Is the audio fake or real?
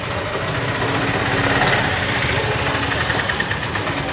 real